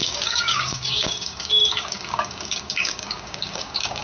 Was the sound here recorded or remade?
remade